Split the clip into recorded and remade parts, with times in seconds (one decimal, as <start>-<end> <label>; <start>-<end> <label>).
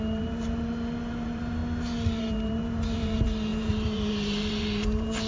0.0-1.6 remade; 1.6-2.2 recorded; 2.2-5.3 remade